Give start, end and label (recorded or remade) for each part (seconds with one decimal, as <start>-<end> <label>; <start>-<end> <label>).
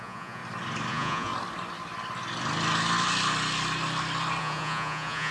0.0-0.4 remade; 0.4-0.9 recorded; 0.9-1.3 remade; 1.3-4.4 recorded; 4.4-5.3 remade